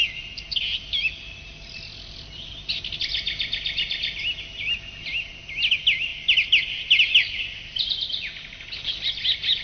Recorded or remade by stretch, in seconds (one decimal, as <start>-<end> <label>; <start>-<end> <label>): 0.0-9.6 recorded